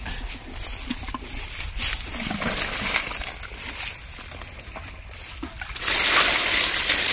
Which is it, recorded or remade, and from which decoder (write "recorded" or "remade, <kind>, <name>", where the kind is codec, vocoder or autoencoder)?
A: recorded